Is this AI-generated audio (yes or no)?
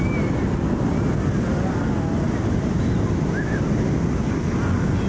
no